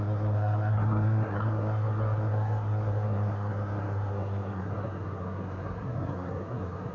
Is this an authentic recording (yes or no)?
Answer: no